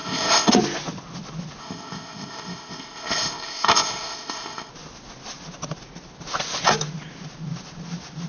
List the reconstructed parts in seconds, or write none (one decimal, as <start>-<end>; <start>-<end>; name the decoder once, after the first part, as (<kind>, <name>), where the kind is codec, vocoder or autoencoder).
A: 0.0-0.5 (codec, ZipCodec); 1.6-4.7

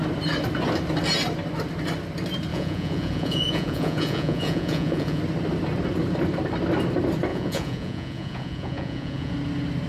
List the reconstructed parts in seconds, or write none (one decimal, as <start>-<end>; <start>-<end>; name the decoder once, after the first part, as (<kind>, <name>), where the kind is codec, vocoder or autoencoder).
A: 2.5-5.2 (vocoder, Vocos); 7.3-9.3

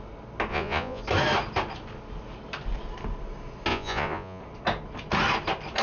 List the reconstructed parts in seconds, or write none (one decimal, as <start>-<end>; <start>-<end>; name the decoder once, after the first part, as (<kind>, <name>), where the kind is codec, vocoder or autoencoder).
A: 0.5-1.0 (vocoder, Vocos); 3.7-4.4

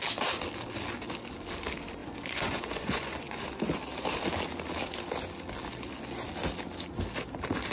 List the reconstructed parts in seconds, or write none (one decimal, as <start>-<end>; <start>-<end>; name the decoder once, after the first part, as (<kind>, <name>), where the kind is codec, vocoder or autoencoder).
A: 2.0-3.4 (vocoder, Vocos)

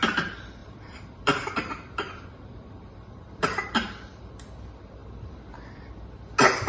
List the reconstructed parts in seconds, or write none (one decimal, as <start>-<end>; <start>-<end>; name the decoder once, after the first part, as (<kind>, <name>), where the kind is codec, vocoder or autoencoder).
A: 0.6-4.3 (vocoder, BigVGAN v2)

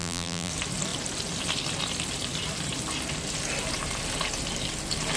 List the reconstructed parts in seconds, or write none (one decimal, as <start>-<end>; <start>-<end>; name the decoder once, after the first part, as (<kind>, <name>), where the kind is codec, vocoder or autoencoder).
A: 0.0-0.5 (vocoder, BigVGAN v2)

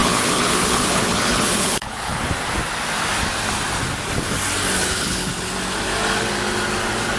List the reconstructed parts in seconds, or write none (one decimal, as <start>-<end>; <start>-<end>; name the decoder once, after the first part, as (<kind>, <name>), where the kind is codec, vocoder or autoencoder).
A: 0.0-2.2 (codec, HILCodec); 4.8-5.3